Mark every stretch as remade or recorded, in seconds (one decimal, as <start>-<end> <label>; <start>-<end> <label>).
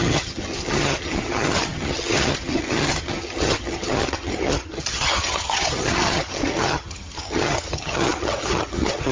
0.0-9.1 remade